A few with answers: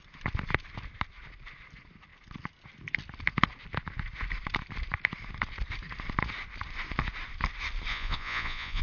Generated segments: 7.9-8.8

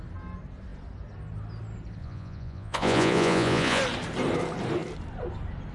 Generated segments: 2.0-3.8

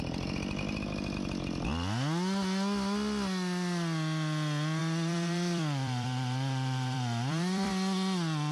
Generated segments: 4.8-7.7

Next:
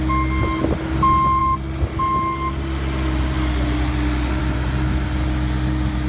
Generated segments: none

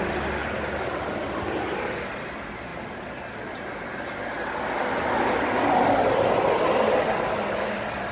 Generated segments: 0.4-1.4; 2.7-4.4

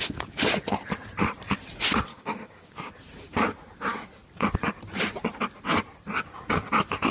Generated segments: 2.1-2.9

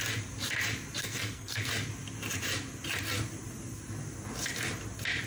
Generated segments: 1.0-1.7

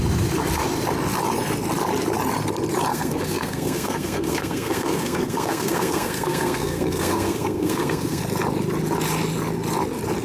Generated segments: 2.9-8.2